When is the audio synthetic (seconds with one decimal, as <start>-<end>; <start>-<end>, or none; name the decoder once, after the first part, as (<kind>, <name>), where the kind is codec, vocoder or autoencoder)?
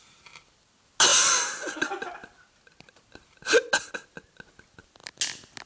none